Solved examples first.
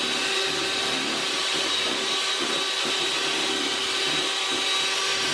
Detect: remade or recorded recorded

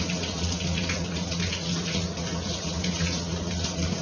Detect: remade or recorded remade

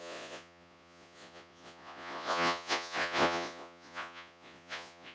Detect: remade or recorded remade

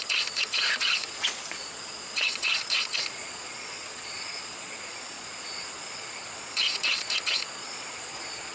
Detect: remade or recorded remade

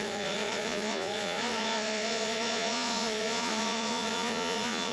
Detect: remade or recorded remade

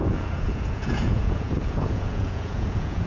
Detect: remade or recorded remade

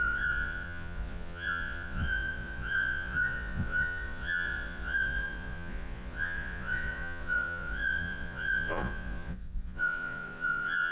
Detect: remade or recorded remade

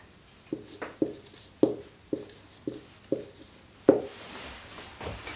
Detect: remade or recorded recorded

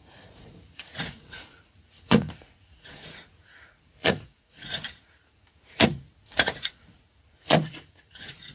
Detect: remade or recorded remade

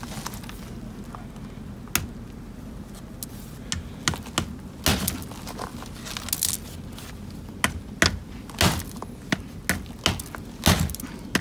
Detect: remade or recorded recorded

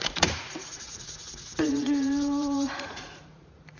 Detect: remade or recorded remade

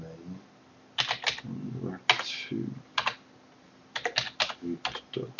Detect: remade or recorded recorded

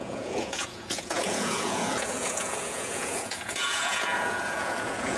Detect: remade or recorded remade